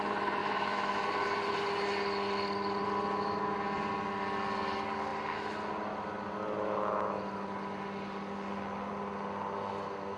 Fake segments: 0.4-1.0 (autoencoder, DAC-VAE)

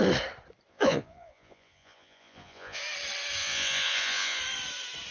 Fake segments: 0.7-2.8 (vocoder, Vocos); 3.4-4.4

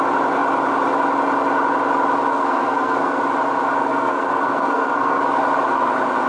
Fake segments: 2.3-3.2 (codec, SNAC); 3.8-5.2

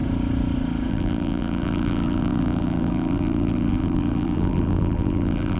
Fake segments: 0.9-5.6 (vocoder, BigVGAN v2)

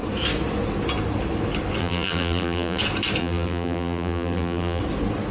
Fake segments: 1.8-2.8 (vocoder, BigVGAN v2); 3.2-4.8

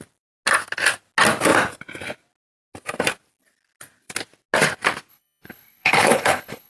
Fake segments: 5.1-6.7 (codec, HILCodec)

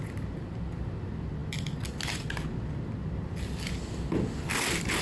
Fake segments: none